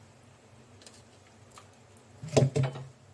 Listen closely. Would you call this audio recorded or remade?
recorded